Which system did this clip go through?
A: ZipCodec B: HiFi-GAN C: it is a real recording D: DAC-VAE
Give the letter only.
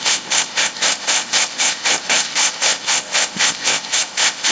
A